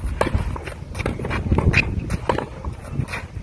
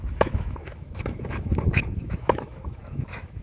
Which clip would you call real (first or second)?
first